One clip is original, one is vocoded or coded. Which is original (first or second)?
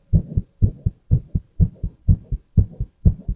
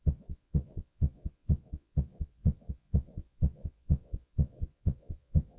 first